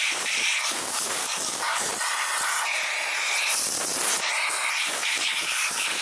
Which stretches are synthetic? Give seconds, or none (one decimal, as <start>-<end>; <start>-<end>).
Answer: 0.0-1.9; 4.8-6.0